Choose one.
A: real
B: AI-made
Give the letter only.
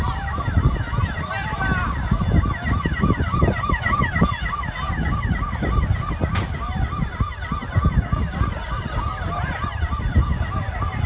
A